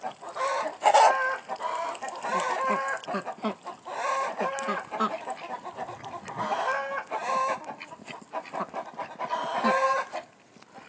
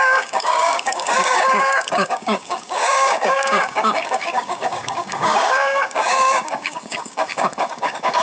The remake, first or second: second